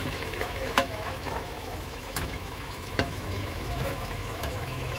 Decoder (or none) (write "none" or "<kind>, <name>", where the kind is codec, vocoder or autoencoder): autoencoder, DAC-VAE